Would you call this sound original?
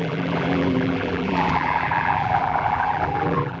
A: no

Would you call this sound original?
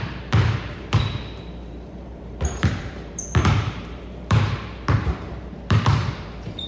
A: no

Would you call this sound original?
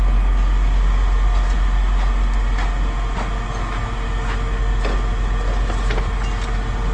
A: yes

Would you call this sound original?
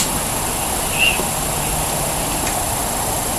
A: yes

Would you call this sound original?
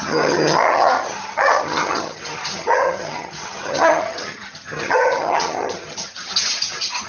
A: no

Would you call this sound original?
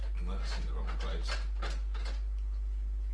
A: yes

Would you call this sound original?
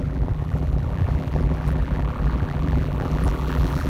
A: no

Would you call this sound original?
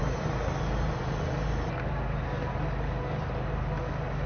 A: yes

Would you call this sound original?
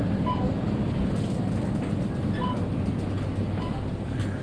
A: yes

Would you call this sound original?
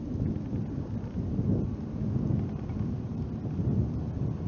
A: yes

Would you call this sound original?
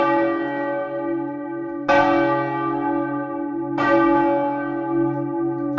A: yes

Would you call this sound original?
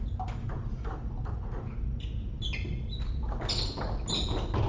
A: yes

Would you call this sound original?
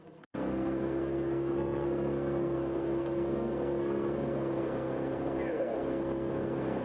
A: no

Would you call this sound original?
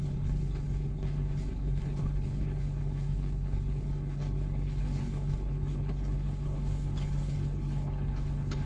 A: no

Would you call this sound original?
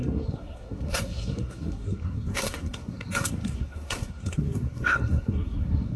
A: no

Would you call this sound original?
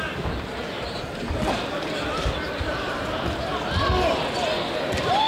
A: yes